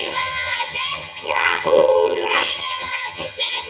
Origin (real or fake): fake